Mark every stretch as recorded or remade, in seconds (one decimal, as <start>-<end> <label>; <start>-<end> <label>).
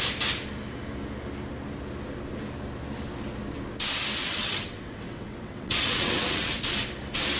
0.0-4.2 recorded; 4.2-6.6 remade; 6.6-7.4 recorded